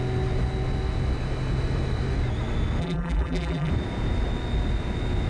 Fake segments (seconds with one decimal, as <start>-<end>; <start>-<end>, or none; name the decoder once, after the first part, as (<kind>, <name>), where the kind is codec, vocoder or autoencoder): 2.8-3.7 (vocoder, BigVGAN v2)